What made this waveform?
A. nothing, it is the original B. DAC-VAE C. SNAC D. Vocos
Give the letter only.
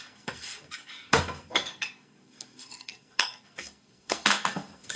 C